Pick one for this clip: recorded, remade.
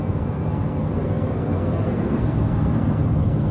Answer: remade